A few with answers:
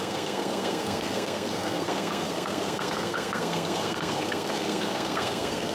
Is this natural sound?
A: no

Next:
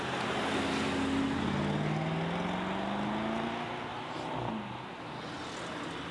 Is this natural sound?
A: yes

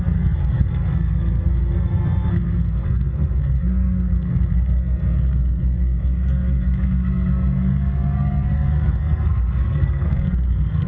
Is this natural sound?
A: no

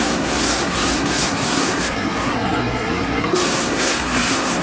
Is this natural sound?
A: no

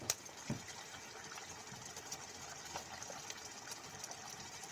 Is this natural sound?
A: yes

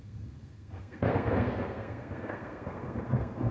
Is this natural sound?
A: no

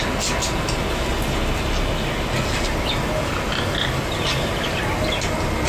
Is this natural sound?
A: yes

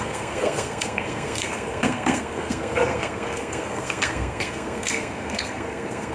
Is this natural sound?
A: no